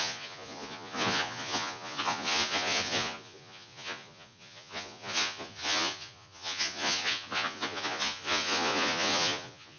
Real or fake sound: fake